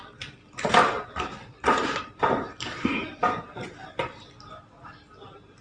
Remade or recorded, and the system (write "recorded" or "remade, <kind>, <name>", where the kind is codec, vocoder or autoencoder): recorded